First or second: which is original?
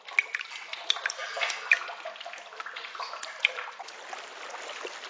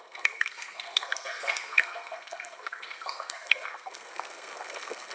first